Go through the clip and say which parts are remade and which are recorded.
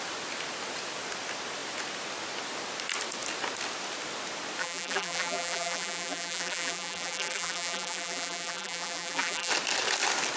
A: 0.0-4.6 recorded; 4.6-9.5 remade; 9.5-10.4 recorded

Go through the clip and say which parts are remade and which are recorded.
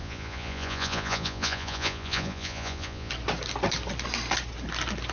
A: 0.0-3.1 remade; 3.1-5.1 recorded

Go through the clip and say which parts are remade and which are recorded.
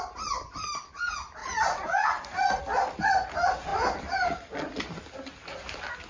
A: 0.0-1.4 recorded; 1.4-2.6 remade; 2.6-6.1 recorded